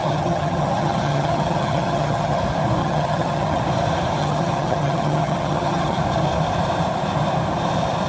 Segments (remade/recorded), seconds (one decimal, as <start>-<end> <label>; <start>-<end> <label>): 0.0-2.4 remade; 2.4-2.8 recorded; 2.8-3.6 remade; 3.6-4.2 recorded; 4.2-6.0 remade; 6.0-8.1 recorded